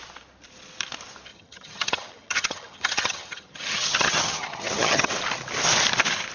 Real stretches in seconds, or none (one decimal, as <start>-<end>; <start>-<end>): 0.0-1.3; 5.1-6.3